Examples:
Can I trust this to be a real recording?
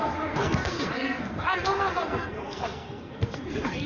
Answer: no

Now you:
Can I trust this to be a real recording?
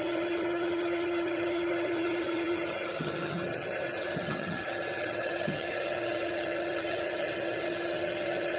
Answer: no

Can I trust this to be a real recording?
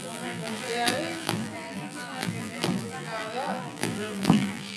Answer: no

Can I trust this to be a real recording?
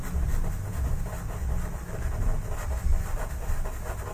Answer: yes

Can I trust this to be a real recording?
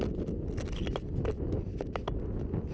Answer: yes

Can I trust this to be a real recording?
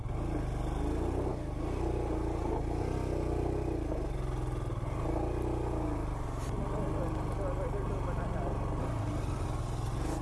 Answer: yes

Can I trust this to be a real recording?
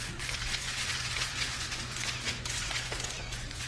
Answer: no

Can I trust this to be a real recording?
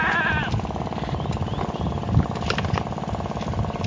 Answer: yes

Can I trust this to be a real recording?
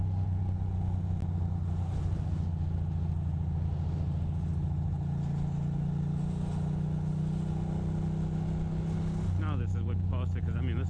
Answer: yes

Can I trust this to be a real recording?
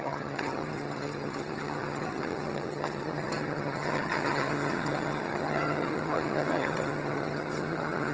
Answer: no